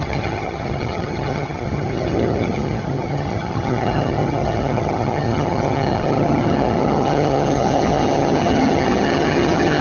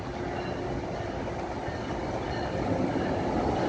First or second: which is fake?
first